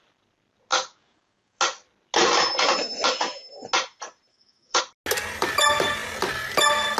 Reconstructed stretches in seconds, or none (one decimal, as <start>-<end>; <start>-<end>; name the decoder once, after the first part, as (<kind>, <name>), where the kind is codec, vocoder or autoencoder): 0.7-1.6 (codec, DAC); 4.3-4.8